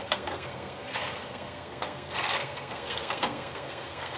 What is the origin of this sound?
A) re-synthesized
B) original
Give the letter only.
A